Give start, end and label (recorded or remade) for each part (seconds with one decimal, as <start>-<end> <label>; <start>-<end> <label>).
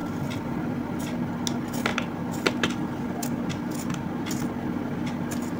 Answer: 0.0-1.0 remade; 1.0-5.6 recorded